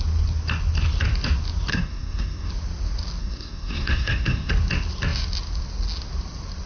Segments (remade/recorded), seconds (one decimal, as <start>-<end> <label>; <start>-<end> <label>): 0.0-1.7 recorded; 1.7-2.5 remade; 2.5-3.2 recorded; 3.2-4.5 remade; 4.5-6.7 recorded